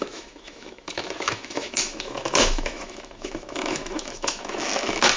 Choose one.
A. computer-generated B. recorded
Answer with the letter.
A